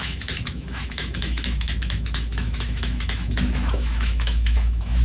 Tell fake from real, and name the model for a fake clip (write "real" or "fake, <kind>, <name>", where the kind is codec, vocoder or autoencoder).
fake, autoencoder, DAC-VAE